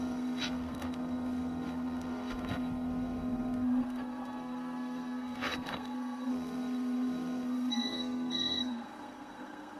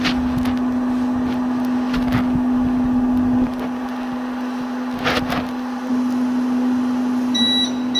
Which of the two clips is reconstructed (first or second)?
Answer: first